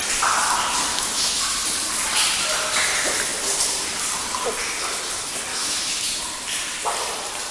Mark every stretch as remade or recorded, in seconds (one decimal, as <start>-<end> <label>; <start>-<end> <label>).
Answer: 0.0-0.9 recorded; 0.9-1.4 remade; 1.4-5.5 recorded; 5.5-6.2 remade; 6.2-7.5 recorded